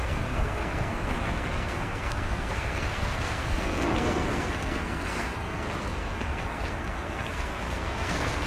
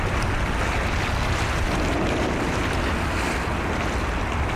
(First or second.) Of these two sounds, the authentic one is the second